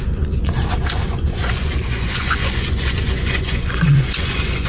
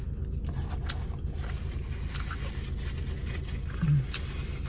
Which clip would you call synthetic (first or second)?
first